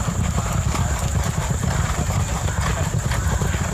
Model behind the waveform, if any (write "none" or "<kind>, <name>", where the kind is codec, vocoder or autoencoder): none